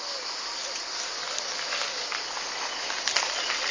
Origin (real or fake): real